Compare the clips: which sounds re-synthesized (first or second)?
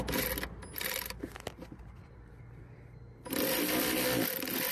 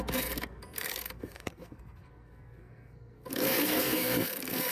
second